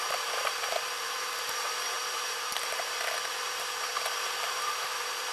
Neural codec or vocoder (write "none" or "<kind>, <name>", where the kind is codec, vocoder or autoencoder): vocoder, BigVGAN v2